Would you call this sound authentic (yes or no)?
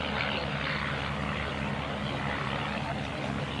yes